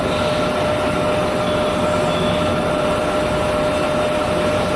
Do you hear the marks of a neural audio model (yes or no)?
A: no